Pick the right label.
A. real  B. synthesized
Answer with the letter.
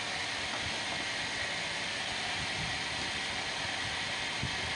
A